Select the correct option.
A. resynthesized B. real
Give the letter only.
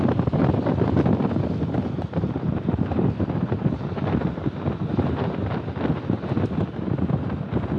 B